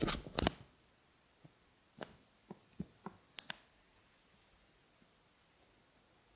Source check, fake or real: real